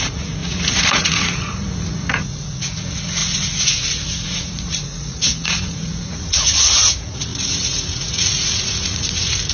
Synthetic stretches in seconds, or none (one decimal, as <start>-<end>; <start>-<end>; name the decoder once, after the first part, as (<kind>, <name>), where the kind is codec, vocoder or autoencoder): 0.0-9.5 (vocoder, Vocos)